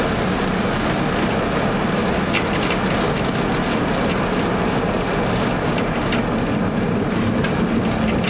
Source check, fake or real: real